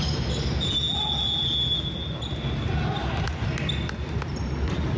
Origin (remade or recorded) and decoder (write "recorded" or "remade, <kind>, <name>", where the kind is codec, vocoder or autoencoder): recorded